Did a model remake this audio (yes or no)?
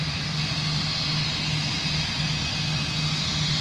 no